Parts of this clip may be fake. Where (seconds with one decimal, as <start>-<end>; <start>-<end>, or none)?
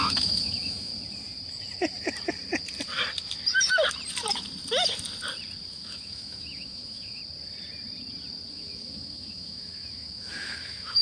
0.0-0.9; 5.7-7.2; 8.5-11.0